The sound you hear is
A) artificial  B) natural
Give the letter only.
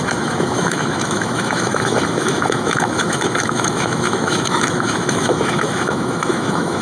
A